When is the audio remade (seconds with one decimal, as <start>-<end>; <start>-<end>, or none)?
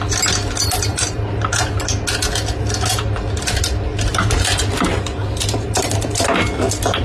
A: 0.9-1.8; 4.1-5.8